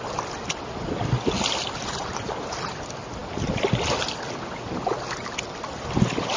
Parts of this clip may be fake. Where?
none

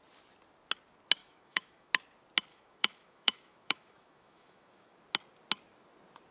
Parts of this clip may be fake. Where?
1.2-1.9 (autoencoder, DAC-VAE); 2.5-5.0

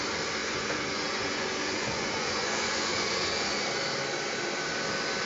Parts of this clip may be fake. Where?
0.4-3.6 (vocoder, Vocos)

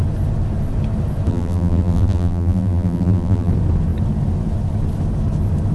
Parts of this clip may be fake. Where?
1.3-3.5 (vocoder, BigVGAN v2)

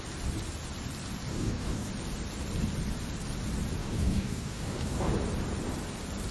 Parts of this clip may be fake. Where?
1.3-1.9 (codec, DAC); 3.8-5.1

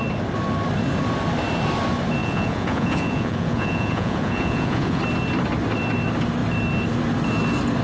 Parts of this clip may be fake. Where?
2.2-5.0 (vocoder, Vocos)